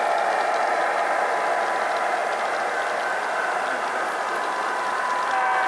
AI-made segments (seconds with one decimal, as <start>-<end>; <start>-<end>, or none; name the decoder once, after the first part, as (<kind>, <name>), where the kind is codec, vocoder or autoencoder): none